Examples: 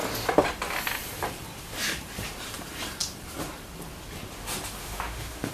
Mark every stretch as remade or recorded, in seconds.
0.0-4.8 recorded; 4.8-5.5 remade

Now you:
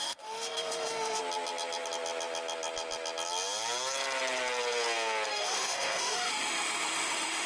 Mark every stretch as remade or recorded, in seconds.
0.0-1.2 remade; 1.2-5.3 recorded; 5.3-7.5 remade

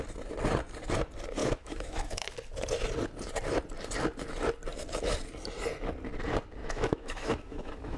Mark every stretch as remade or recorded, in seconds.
0.0-1.4 recorded; 1.4-2.3 remade; 2.3-6.6 recorded; 6.6-8.0 remade

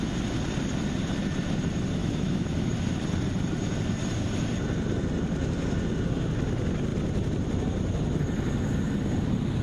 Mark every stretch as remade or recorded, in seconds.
0.0-2.0 recorded; 2.0-2.7 remade; 2.7-9.6 recorded

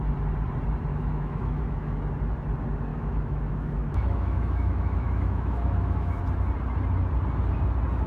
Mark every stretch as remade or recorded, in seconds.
0.0-0.9 recorded; 0.9-2.0 remade; 2.0-2.9 recorded; 2.9-6.2 remade; 6.2-8.1 recorded